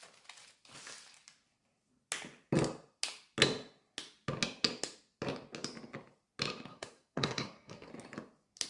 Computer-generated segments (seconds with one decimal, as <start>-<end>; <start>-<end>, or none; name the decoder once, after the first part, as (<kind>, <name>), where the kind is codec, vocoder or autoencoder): 6.7-7.9 (codec, SNAC)